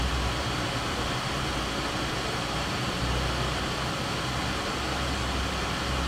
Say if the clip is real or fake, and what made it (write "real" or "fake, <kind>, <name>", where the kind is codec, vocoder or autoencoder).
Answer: real